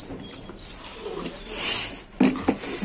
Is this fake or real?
real